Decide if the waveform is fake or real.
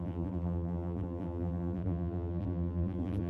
fake